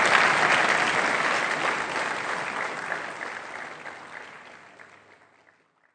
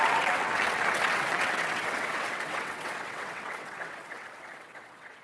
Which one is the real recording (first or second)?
first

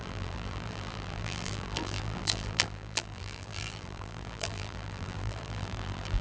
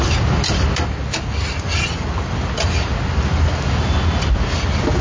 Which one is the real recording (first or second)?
second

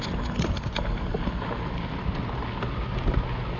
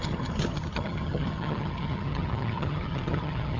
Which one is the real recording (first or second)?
first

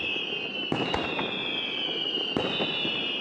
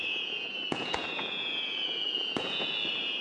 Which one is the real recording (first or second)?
first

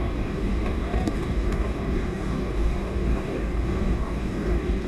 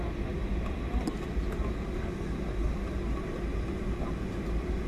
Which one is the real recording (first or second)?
second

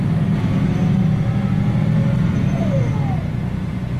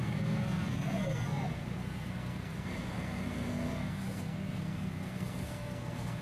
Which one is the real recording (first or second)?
first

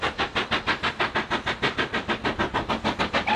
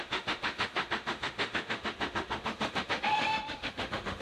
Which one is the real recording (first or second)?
first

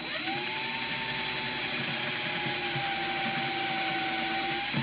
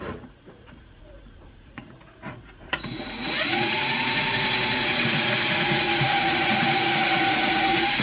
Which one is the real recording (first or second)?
first